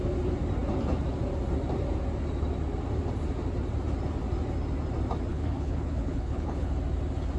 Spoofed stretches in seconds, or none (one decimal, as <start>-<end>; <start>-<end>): 5.3-6.7